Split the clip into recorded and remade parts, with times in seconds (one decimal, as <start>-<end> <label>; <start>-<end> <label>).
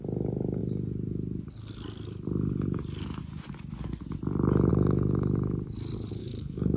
0.0-6.2 recorded; 6.2-6.8 remade